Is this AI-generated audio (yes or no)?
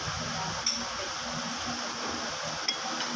no